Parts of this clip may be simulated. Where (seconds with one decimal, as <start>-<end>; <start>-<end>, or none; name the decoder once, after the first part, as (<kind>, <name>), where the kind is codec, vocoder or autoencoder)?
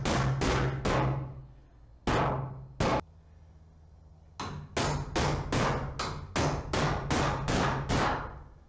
none